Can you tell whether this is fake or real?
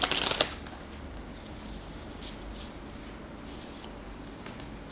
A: real